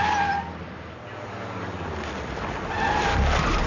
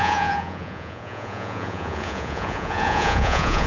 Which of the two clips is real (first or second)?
first